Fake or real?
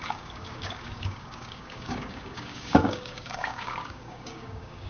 fake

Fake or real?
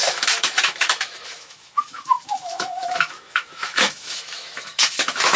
fake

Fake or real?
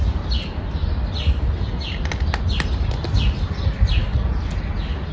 real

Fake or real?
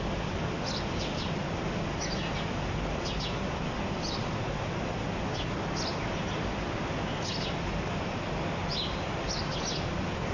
real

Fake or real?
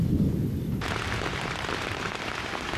real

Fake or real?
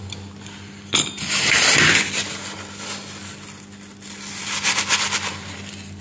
real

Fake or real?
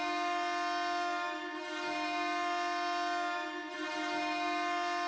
real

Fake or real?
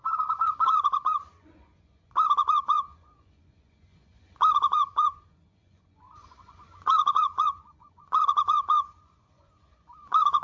fake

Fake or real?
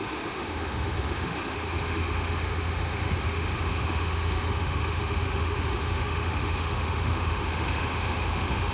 fake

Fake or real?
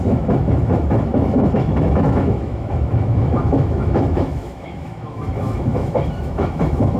fake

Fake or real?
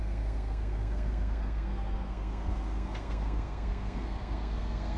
fake